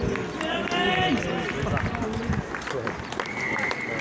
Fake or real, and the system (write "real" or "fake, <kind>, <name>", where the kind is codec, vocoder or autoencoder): real